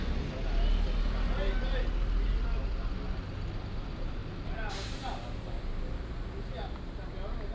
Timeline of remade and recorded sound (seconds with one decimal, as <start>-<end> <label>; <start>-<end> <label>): 0.0-7.5 recorded